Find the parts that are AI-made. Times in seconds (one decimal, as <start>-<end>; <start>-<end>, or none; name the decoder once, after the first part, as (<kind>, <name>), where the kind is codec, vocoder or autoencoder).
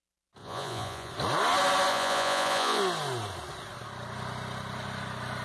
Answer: 0.4-1.1 (vocoder, Vocos); 1.9-2.8